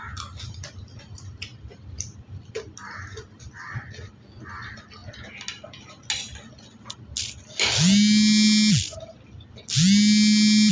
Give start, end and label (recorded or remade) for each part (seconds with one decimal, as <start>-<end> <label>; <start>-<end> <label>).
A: 0.0-10.7 recorded